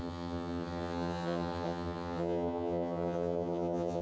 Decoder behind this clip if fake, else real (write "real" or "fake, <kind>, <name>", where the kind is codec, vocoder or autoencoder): fake, vocoder, HiFi-GAN